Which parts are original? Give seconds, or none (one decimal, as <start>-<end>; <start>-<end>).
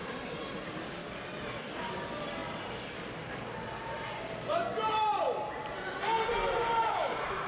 0.0-7.5